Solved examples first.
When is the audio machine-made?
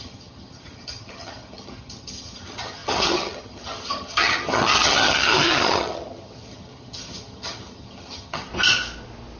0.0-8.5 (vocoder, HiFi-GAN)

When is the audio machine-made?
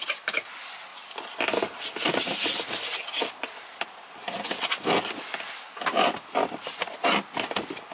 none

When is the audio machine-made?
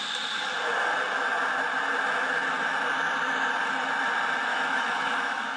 4.5-5.6 (autoencoder, DAC-VAE)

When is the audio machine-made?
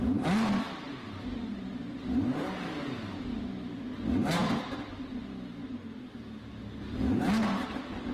0.9-2.6 (vocoder, BigVGAN v2)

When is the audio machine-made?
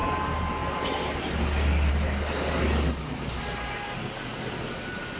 none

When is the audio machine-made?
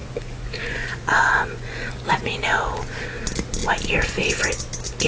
0.0-2.6 (vocoder, Vocos)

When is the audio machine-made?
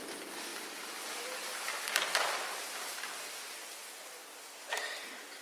none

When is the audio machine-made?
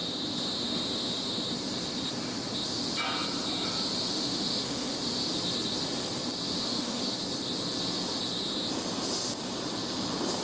4.1-4.9 (autoencoder, DAC-VAE); 6.6-7.0